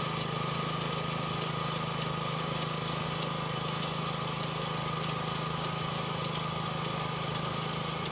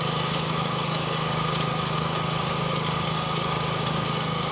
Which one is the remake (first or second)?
second